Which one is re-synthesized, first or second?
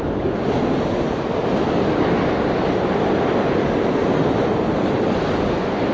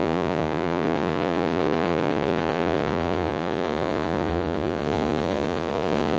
second